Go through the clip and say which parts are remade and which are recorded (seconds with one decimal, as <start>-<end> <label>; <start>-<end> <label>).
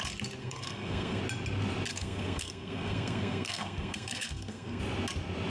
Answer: 0.0-0.4 recorded; 0.4-1.2 remade; 1.2-1.9 recorded; 1.9-4.8 remade; 4.8-5.5 recorded